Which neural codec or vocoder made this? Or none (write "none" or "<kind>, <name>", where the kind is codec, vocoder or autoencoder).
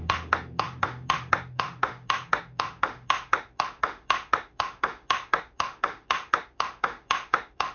autoencoder, DAC-VAE